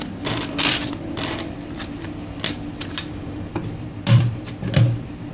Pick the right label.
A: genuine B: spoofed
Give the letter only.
B